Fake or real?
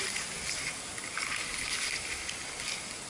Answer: real